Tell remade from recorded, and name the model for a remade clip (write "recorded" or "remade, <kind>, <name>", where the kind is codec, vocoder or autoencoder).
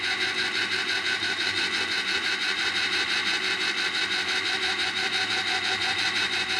remade, vocoder, Vocos